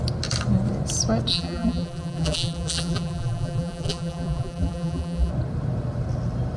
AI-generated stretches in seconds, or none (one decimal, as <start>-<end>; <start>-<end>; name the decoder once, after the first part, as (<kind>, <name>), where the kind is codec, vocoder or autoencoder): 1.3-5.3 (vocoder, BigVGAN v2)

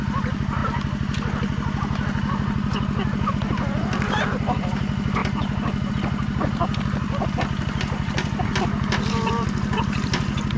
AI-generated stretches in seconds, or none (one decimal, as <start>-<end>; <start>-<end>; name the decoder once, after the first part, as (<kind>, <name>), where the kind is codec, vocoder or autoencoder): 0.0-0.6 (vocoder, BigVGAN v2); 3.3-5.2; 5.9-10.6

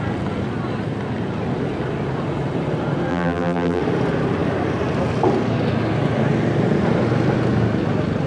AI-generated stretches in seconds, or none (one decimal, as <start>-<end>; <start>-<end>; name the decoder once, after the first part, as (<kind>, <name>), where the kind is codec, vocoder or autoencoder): 3.1-3.8 (vocoder, BigVGAN v2)